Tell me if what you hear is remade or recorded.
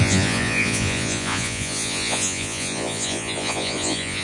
remade